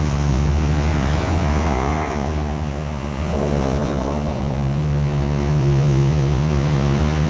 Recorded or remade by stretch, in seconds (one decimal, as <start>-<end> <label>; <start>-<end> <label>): 0.0-7.3 remade